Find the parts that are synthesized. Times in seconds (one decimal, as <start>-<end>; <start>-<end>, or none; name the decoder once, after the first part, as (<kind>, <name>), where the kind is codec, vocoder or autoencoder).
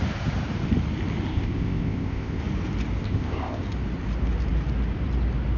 1.3-2.4 (codec, ZipCodec); 3.0-3.6